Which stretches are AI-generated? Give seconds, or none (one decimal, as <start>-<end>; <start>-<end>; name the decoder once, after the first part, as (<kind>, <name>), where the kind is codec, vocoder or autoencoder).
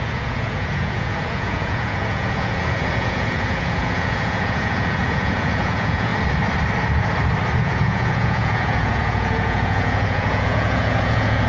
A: 0.0-6.1 (vocoder, Vocos); 7.6-11.5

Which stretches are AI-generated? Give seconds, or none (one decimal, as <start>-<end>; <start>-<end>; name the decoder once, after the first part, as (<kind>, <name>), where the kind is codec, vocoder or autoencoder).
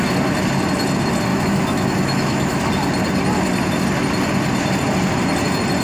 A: 1.3-2.7 (autoencoder, DAC-VAE)